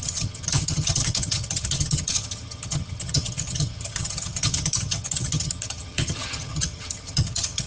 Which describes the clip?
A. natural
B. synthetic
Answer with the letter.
B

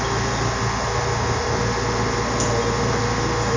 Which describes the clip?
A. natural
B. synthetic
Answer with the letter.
A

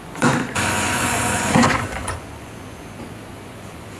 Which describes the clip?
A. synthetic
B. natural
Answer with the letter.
A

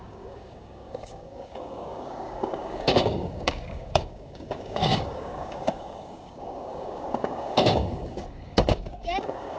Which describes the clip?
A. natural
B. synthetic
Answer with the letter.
B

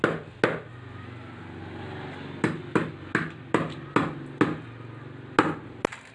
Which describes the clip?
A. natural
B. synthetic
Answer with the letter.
A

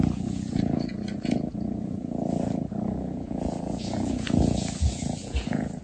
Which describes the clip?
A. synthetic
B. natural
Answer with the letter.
A